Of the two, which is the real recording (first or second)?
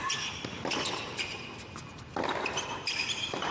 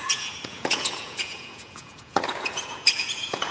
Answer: first